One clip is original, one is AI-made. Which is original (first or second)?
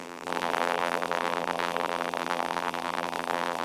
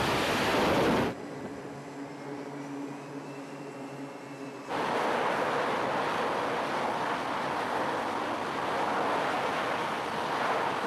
second